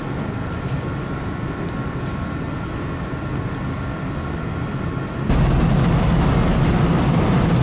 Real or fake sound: real